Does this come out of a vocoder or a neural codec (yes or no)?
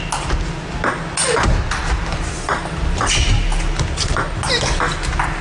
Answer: no